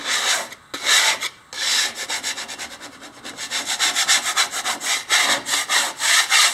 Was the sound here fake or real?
real